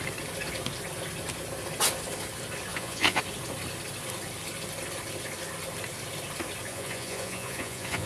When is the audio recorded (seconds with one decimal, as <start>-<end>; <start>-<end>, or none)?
0.0-2.7; 3.2-6.7